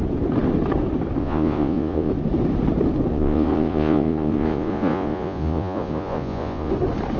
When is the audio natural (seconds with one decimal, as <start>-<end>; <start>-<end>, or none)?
0.0-1.2; 2.1-3.1; 6.7-7.2